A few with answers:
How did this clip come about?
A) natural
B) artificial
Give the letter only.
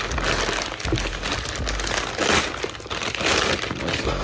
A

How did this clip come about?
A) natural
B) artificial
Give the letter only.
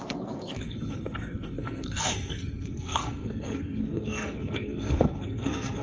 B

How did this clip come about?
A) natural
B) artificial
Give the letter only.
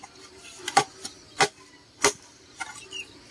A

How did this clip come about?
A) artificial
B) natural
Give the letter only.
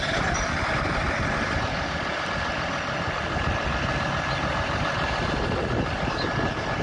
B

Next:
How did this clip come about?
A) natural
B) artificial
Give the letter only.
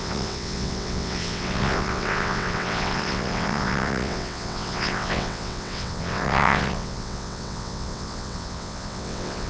B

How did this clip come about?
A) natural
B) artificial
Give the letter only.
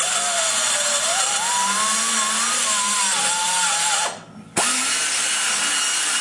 A